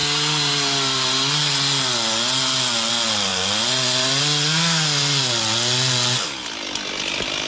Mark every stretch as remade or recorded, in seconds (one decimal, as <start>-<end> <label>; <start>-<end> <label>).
0.0-7.5 recorded